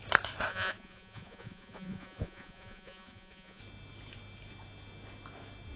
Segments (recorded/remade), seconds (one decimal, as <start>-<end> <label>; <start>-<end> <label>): 0.0-0.5 recorded; 0.5-3.6 remade; 3.6-5.8 recorded